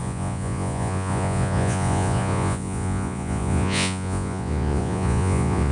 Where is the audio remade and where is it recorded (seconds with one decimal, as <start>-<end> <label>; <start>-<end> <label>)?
0.0-5.7 remade